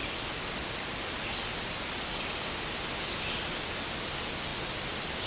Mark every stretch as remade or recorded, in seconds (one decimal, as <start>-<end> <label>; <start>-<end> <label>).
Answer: 0.0-5.3 recorded